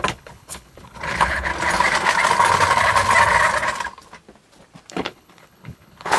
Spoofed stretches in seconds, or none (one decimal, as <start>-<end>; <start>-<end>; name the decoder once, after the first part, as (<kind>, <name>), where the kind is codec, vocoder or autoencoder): 0.0-1.5 (codec, HILCodec); 4.9-6.2